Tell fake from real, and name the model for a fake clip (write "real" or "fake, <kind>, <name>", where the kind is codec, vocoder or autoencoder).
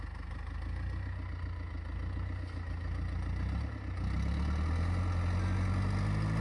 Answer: real